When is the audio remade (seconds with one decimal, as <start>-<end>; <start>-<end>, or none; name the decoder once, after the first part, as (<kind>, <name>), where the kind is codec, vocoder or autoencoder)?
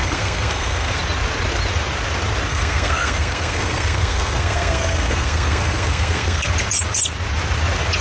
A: 0.0-1.0 (codec, SNAC); 2.5-6.5